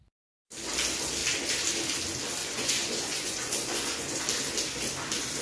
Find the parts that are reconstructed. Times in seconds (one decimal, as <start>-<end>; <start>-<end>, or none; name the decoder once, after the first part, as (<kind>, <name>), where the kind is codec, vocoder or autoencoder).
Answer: 2.4-4.2 (vocoder, Vocos)